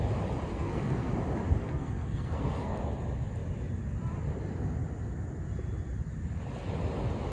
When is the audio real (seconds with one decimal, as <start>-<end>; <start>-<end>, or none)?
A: 0.0-0.5; 1.1-1.6; 2.8-7.3